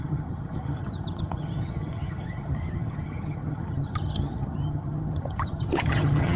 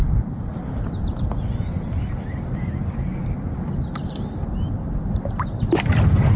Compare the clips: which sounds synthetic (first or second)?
first